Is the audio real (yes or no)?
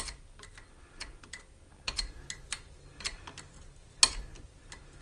yes